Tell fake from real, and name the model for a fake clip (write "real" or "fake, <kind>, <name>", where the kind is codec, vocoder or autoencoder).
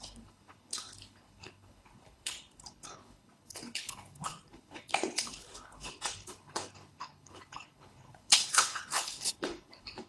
fake, codec, HILCodec